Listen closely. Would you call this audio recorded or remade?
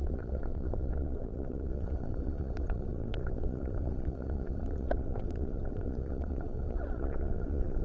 remade